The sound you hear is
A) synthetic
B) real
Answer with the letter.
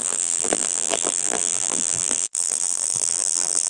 A